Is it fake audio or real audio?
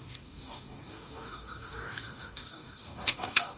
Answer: fake